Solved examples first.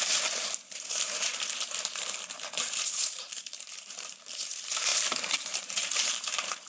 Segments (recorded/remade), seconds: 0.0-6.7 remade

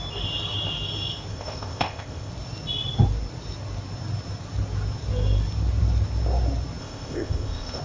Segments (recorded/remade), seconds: 0.0-1.3 recorded; 1.3-2.3 remade; 2.3-6.8 recorded; 6.8-7.8 remade

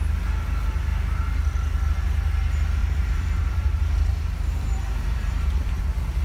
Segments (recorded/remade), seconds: 0.0-2.8 recorded; 2.8-5.8 remade; 5.8-6.2 recorded